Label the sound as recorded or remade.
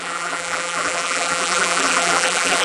remade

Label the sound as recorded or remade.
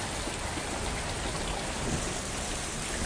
recorded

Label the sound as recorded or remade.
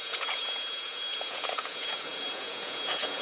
remade